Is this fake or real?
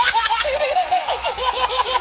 fake